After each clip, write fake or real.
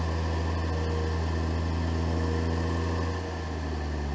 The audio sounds real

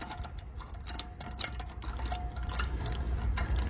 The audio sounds real